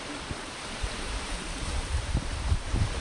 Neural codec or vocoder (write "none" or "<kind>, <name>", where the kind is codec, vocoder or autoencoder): vocoder, BigVGAN v2